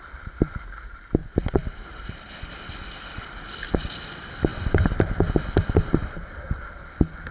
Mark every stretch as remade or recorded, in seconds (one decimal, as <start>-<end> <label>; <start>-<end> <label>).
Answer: 0.0-1.2 recorded; 1.2-2.3 remade; 2.3-4.5 recorded; 4.5-5.1 remade; 5.1-6.0 recorded; 6.0-6.6 remade; 6.6-7.3 recorded